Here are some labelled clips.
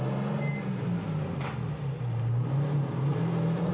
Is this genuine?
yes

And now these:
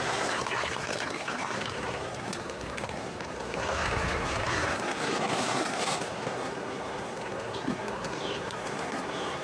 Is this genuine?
no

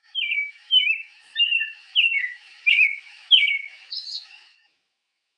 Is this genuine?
no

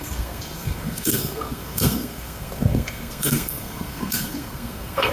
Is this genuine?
no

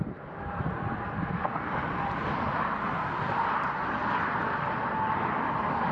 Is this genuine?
yes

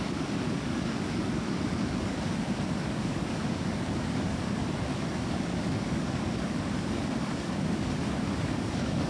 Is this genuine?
no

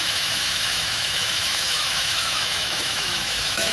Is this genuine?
no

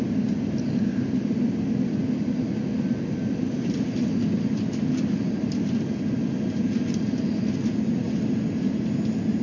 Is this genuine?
yes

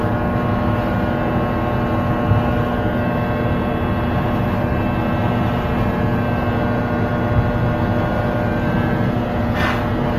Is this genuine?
yes